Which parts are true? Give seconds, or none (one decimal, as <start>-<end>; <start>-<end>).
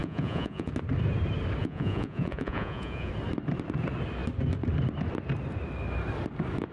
0.7-1.6; 3.1-6.7